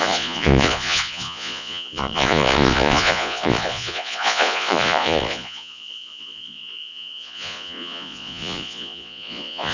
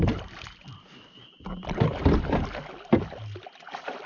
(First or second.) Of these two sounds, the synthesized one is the first